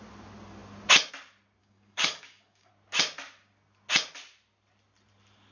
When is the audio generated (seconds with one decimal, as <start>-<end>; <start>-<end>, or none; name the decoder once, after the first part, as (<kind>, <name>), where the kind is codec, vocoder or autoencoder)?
1.6-2.7 (codec, DAC)